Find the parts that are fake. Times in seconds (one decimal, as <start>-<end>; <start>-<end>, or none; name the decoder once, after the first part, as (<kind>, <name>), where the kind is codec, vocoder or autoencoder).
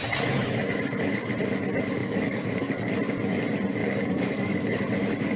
2.0-2.9 (codec, DAC); 3.8-4.8